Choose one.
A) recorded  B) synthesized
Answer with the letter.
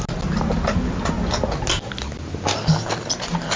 A